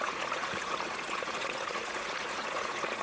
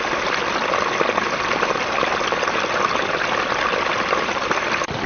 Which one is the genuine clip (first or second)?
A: second